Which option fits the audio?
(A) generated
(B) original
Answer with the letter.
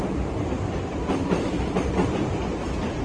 B